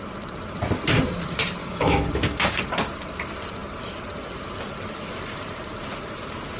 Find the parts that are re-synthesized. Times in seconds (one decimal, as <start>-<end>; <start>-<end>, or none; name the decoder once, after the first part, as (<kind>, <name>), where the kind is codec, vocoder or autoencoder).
1.6-2.6 (codec, DAC)